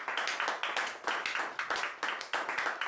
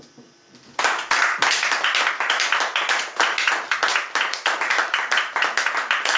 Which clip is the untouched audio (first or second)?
first